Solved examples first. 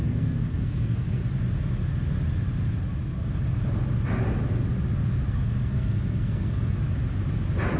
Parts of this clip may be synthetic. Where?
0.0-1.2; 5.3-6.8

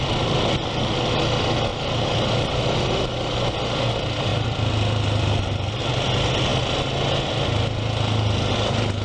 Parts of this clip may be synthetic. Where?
1.7-2.9; 4.3-5.8